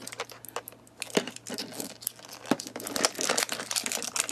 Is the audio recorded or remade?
recorded